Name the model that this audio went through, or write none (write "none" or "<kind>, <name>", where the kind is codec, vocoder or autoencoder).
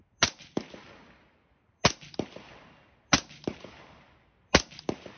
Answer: none